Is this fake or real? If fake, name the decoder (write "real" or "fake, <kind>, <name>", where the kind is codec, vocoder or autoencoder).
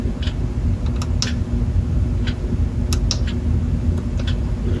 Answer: real